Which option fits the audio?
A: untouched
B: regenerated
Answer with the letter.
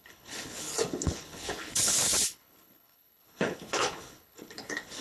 B